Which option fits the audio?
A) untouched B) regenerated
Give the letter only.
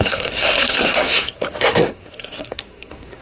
B